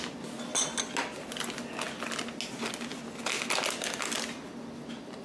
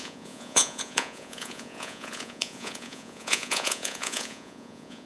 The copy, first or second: second